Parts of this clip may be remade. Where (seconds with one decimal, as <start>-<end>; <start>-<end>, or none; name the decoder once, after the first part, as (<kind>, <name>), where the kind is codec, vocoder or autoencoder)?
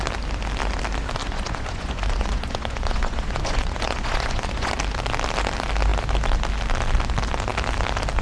1.2-4.7 (vocoder, Vocos)